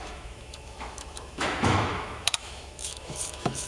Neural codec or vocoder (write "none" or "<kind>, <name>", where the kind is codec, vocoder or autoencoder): autoencoder, DAC-VAE